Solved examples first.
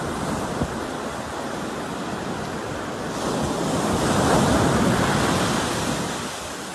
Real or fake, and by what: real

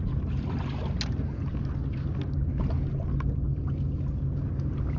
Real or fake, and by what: real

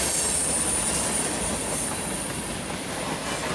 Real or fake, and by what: real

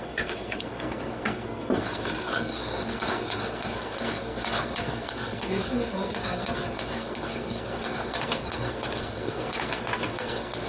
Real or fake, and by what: fake, codec, SNAC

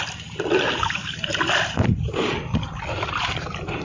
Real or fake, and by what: real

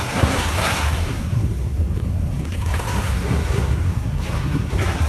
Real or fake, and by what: fake, codec, SNAC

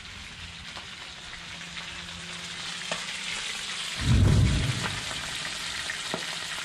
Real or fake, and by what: real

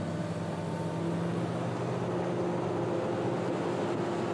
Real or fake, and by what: real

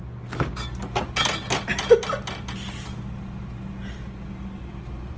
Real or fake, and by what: real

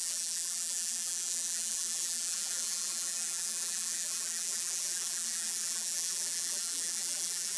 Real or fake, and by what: fake, vocoder, BigVGAN v2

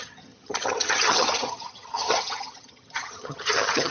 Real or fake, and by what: fake, vocoder, HiFi-GAN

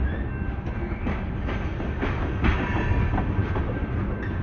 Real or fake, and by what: real